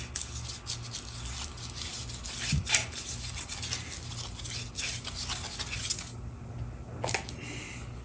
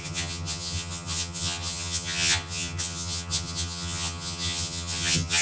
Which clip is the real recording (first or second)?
first